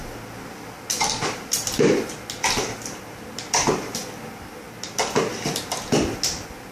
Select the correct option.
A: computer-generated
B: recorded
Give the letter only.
B